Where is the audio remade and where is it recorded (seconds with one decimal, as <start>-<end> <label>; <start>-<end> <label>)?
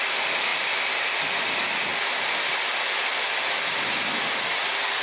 0.0-5.0 recorded